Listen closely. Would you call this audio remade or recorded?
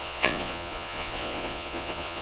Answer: remade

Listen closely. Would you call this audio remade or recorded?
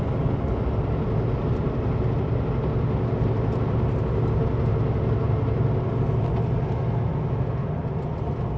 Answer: recorded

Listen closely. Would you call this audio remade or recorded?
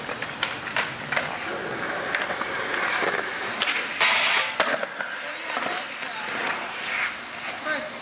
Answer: recorded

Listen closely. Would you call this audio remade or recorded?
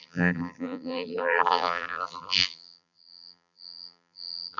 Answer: remade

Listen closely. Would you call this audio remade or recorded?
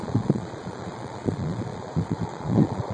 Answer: remade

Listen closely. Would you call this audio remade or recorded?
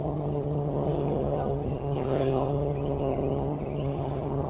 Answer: remade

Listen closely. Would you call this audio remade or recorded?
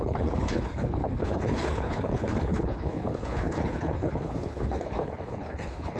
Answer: remade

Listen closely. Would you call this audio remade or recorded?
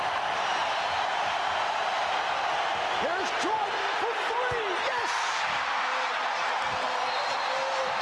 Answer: recorded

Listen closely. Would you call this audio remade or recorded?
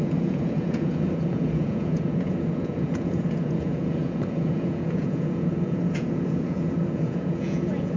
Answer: remade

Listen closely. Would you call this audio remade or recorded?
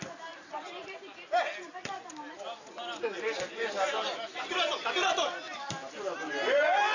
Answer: recorded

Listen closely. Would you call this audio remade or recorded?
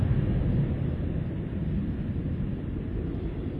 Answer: recorded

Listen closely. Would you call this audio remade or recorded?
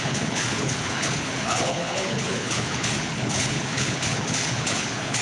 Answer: remade